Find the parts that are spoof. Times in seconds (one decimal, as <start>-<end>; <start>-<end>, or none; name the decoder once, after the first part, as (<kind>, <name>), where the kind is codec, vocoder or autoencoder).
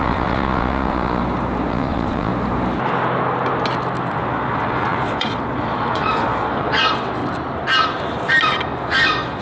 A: 0.0-1.2 (vocoder, Vocos); 1.7-2.3; 4.1-7.2; 8.8-9.4